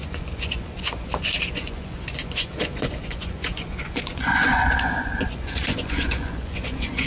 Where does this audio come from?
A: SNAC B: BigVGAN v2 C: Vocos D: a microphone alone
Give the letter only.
C